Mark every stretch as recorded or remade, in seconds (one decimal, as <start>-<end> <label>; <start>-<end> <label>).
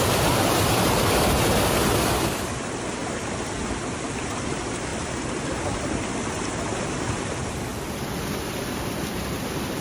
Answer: 0.0-3.0 remade; 3.0-4.3 recorded; 4.3-4.9 remade; 4.9-7.1 recorded; 7.1-7.7 remade; 7.7-8.4 recorded; 8.4-9.8 remade